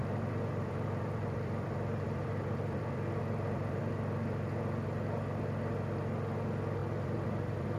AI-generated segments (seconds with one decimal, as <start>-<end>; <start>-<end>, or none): 0.0-3.8; 6.8-7.8